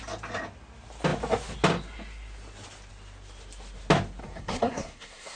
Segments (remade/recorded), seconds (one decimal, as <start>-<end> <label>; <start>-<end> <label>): 0.0-4.2 recorded; 4.2-5.4 remade